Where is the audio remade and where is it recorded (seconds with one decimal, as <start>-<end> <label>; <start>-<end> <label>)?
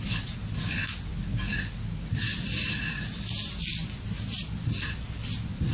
0.0-5.7 recorded